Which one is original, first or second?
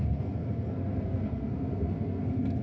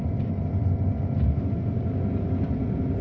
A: second